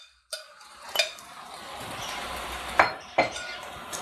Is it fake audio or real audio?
fake